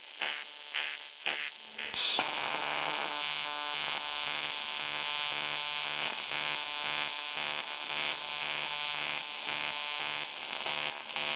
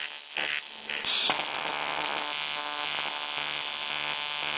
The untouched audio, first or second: second